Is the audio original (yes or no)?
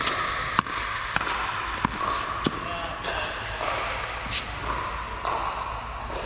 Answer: yes